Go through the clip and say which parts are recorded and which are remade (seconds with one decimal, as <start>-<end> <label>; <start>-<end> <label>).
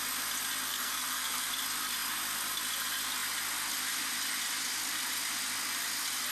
0.0-0.7 recorded; 0.7-1.5 remade; 1.5-6.3 recorded